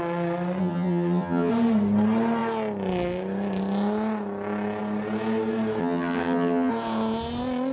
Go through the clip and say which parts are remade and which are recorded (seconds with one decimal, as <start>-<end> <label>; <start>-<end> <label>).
0.0-0.6 recorded; 0.6-1.5 remade; 1.5-5.8 recorded; 5.8-6.7 remade; 6.7-7.7 recorded